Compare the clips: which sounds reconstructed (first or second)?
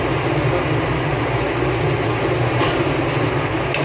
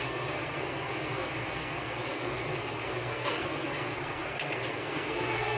second